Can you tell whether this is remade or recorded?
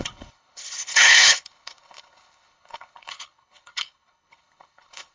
remade